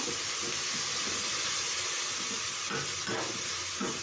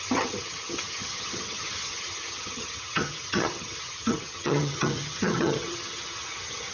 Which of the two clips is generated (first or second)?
second